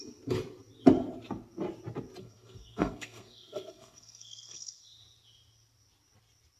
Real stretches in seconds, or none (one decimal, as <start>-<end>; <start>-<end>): 0.0-2.2; 4.8-6.6